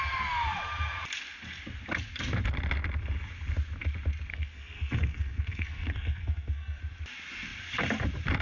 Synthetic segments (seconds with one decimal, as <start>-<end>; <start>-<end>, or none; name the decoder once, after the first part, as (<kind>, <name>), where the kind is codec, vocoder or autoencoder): 4.3-6.8 (codec, SNAC)